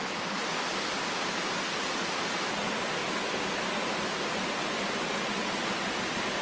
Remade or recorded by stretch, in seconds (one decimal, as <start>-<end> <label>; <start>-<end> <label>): 0.0-6.4 recorded